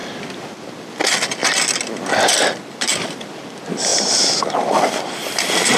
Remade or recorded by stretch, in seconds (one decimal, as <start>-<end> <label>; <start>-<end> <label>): 0.0-0.7 recorded; 0.7-1.4 remade; 1.4-2.1 recorded; 2.1-3.9 remade; 3.9-4.4 recorded; 4.4-5.8 remade